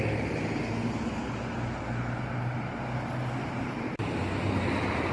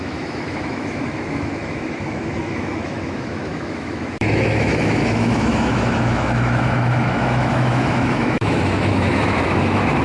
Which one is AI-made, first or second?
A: second